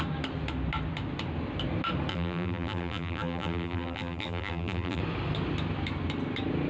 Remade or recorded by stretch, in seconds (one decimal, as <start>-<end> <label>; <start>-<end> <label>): 0.0-2.1 recorded; 2.1-5.0 remade; 5.0-6.7 recorded